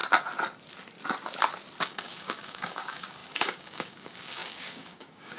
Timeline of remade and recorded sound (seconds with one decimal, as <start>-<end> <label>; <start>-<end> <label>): 0.0-1.8 recorded; 1.8-5.4 remade